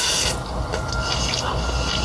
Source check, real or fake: real